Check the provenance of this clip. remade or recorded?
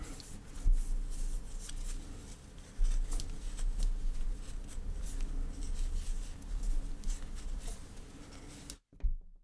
recorded